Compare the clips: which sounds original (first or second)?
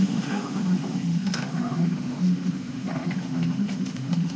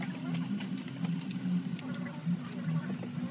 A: second